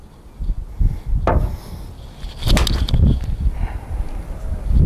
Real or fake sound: real